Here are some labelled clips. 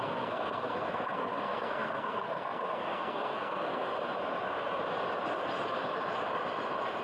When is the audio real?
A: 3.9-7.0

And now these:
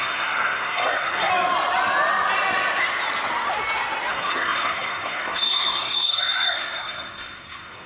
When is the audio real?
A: 1.3-4.1